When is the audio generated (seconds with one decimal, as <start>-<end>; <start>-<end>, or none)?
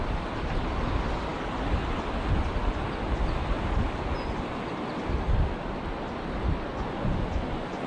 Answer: 6.7-7.9